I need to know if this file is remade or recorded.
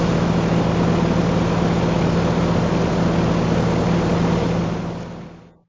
recorded